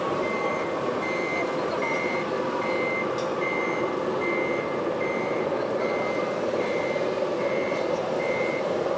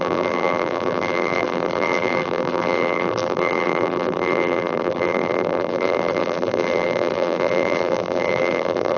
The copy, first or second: second